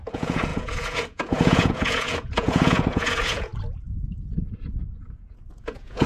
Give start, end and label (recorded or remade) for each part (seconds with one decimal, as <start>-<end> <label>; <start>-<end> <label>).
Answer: 0.0-3.5 remade; 3.5-4.8 recorded; 4.8-6.1 remade